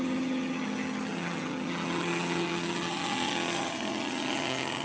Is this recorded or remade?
remade